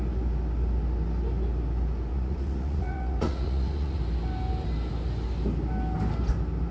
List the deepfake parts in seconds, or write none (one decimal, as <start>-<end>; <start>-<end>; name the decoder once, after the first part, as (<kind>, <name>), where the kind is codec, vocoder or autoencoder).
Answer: 2.1-4.0 (vocoder, Vocos)